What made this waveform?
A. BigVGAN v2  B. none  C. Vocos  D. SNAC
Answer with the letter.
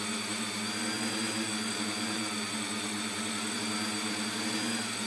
A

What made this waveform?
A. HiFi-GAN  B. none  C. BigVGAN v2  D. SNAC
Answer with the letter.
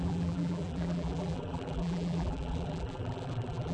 C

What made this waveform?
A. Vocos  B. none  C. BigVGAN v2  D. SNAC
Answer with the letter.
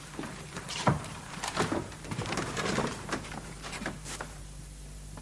C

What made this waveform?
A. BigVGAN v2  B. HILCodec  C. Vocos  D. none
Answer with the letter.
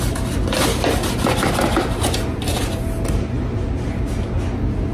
D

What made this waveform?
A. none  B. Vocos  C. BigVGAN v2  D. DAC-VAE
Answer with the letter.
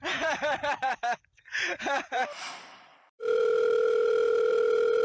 C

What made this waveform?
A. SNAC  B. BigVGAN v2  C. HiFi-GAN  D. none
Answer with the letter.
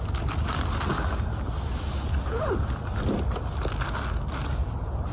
D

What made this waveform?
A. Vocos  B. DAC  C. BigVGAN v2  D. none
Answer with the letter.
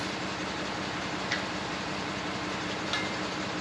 C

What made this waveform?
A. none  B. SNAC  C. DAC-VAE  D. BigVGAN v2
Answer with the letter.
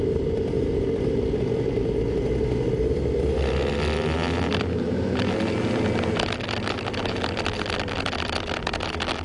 A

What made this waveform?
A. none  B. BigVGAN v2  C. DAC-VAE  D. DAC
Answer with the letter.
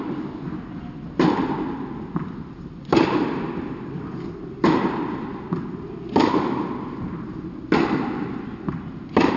A